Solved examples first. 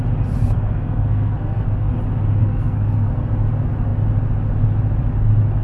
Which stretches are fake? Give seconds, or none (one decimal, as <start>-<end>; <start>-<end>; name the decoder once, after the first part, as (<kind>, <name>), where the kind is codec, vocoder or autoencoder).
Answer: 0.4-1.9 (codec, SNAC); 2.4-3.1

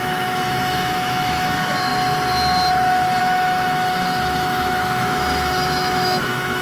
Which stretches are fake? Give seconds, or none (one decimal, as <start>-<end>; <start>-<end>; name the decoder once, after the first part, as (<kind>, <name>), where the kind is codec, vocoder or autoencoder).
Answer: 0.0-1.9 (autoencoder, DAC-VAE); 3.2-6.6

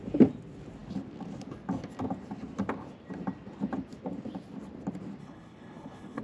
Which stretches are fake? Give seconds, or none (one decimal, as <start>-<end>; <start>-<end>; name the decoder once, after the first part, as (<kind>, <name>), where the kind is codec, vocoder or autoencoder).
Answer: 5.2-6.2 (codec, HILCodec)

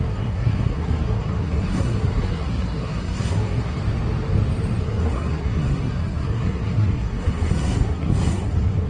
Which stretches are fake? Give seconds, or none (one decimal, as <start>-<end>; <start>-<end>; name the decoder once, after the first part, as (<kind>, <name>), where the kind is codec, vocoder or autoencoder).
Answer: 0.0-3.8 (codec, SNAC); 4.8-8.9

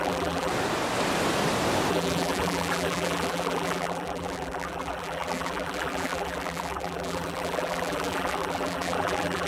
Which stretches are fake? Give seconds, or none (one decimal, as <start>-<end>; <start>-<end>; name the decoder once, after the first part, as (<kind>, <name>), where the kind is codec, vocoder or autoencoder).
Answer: 0.0-0.5 (vocoder, BigVGAN v2); 1.9-9.5